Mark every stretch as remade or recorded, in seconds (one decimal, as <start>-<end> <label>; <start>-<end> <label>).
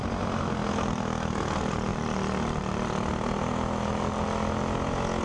0.0-5.2 recorded